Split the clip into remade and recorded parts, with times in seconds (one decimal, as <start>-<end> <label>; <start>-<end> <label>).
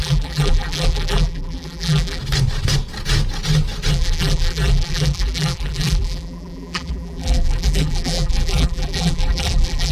0.0-2.2 remade; 2.2-3.9 recorded; 3.9-9.9 remade